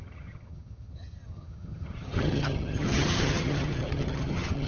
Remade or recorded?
remade